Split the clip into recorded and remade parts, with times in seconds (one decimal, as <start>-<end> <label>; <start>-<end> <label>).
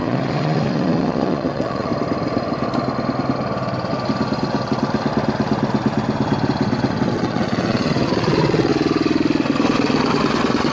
0.0-1.9 remade; 1.9-7.1 recorded; 7.1-8.7 remade; 8.7-10.7 recorded